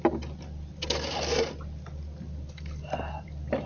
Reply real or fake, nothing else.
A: real